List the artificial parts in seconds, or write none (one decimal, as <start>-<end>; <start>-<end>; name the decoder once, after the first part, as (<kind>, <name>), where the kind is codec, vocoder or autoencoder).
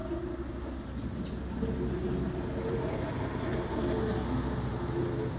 none